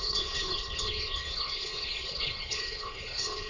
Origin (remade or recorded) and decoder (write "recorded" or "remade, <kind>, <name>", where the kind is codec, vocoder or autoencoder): remade, codec, HILCodec